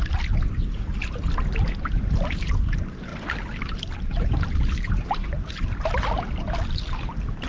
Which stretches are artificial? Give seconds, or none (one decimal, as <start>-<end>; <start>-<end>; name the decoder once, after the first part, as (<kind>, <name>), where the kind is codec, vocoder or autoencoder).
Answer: none